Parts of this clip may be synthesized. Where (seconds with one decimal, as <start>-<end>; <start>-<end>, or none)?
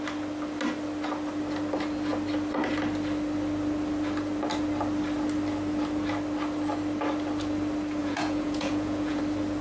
8.0-9.2